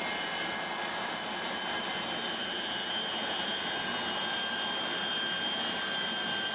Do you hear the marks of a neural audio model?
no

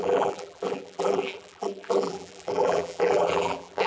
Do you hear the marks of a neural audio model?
yes